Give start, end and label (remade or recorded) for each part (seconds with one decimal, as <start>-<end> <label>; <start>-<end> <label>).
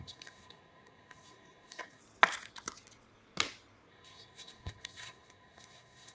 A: 0.0-2.0 remade; 2.0-3.9 recorded; 3.9-6.1 remade